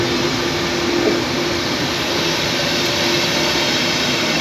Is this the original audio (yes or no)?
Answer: yes